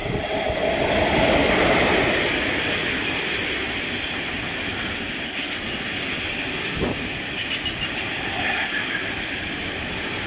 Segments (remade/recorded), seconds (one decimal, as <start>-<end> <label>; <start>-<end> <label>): 0.0-1.5 remade; 1.5-10.3 recorded